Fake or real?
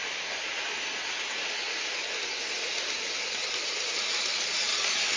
real